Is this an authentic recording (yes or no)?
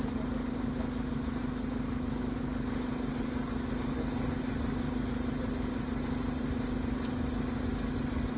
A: yes